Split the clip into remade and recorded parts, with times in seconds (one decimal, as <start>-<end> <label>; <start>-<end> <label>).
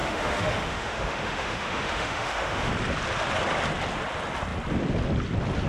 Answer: 0.0-2.7 remade; 2.7-5.7 recorded